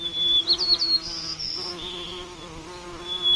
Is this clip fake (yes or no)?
no